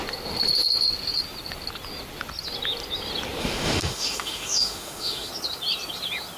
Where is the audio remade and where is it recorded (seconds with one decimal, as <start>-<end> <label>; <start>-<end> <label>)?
0.0-3.4 recorded; 3.4-5.3 remade; 5.3-6.4 recorded